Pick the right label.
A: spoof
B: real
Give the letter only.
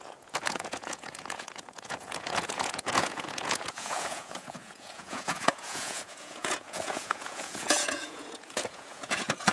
A